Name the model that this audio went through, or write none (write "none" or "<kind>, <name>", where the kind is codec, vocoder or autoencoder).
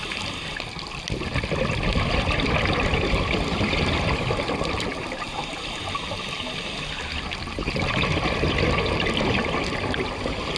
none